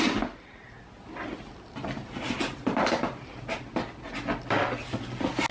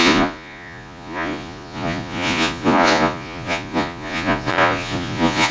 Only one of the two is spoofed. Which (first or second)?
second